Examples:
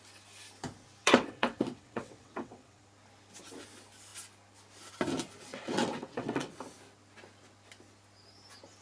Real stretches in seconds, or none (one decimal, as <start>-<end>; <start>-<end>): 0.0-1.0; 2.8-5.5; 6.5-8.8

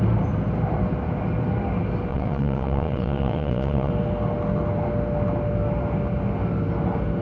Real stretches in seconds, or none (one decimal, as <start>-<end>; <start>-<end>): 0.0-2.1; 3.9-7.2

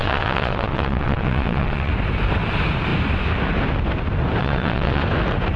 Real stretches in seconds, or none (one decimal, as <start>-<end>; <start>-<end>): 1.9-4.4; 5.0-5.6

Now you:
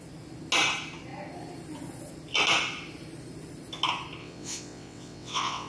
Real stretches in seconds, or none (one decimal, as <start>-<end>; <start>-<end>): 0.0-4.2